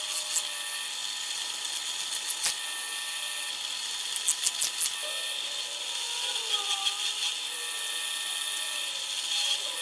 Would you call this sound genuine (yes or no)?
yes